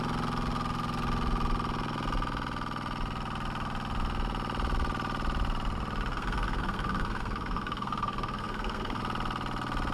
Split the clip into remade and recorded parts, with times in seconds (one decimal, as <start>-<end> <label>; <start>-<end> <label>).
0.0-6.1 recorded; 6.1-9.0 remade; 9.0-9.9 recorded